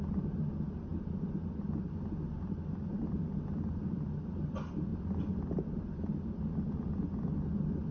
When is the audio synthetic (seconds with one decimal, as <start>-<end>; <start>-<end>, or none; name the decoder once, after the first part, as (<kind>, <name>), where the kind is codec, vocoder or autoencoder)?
none